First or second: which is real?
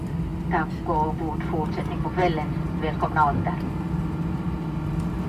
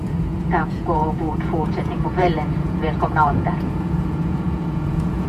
first